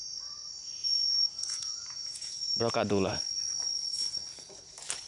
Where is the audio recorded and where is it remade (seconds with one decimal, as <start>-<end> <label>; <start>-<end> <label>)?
0.0-0.8 recorded; 0.8-2.6 remade; 2.6-5.1 recorded